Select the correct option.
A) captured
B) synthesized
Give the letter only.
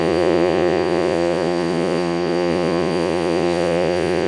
B